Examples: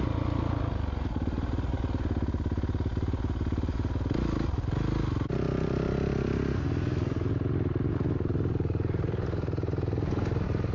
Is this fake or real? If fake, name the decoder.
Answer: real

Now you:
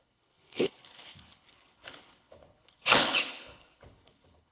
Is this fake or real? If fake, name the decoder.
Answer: fake, codec, HILCodec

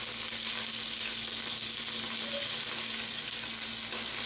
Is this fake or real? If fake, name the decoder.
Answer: real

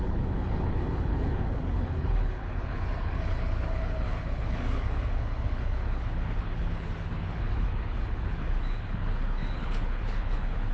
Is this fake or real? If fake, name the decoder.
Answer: fake, codec, HILCodec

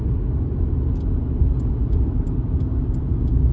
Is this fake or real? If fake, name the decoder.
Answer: real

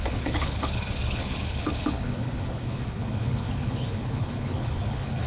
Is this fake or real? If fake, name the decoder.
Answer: fake, codec, HILCodec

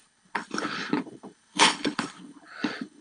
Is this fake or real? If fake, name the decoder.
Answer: fake, codec, HILCodec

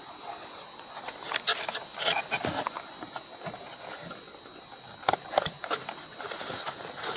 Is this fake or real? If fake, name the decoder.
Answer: real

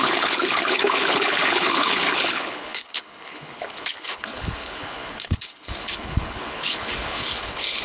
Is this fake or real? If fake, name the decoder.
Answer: fake, codec, HILCodec